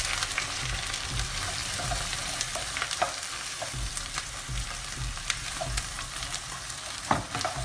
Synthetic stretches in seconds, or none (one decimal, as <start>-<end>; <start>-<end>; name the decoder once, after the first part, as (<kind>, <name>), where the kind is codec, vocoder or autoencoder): 0.0-7.6 (vocoder, BigVGAN v2)